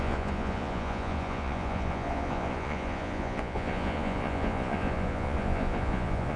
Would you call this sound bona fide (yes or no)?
no